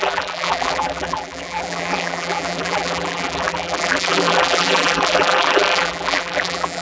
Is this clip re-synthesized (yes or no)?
yes